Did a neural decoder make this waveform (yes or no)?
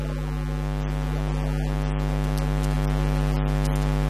no